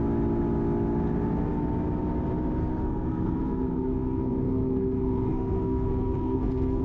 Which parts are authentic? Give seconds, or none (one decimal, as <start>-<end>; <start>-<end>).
0.0-2.6